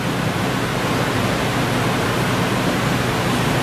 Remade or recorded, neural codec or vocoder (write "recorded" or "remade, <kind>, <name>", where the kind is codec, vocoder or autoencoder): recorded